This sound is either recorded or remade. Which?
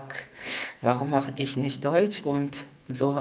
remade